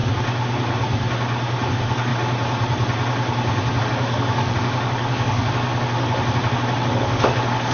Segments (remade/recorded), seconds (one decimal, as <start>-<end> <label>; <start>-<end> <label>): 0.0-1.7 recorded; 1.7-2.1 remade; 2.1-3.8 recorded; 3.8-5.7 remade; 5.7-6.9 recorded; 6.9-7.7 remade